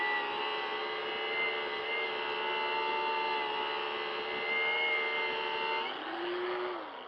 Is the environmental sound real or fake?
real